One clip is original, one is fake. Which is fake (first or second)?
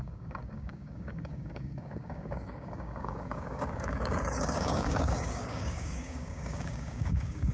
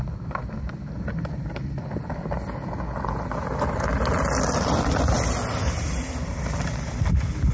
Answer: first